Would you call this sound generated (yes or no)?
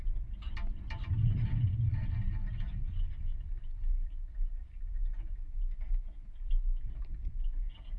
no